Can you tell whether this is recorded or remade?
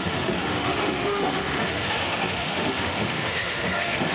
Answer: remade